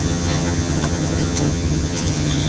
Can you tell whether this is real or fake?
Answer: fake